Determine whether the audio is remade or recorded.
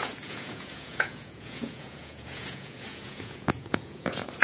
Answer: remade